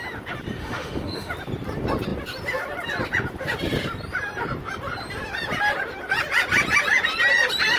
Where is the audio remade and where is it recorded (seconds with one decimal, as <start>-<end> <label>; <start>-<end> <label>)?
0.0-0.6 recorded; 0.6-1.3 remade; 1.3-7.8 recorded